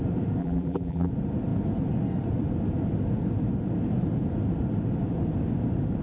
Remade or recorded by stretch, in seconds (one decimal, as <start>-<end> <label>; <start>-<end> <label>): 0.0-0.4 recorded; 0.4-1.1 remade; 1.1-6.0 recorded